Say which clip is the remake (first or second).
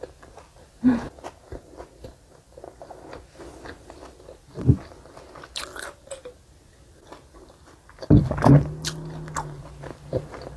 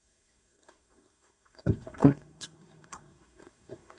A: second